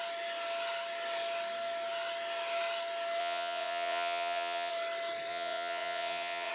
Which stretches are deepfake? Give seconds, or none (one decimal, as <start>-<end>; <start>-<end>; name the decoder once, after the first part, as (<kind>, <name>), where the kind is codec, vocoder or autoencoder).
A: 3.2-4.7 (vocoder, WaveNeXt); 5.3-6.5